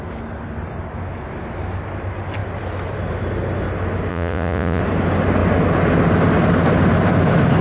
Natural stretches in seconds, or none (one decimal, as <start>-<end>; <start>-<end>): 0.0-4.1; 4.8-7.6